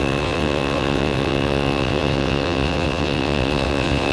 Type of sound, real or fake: fake